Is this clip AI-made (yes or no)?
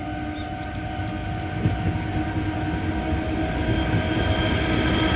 no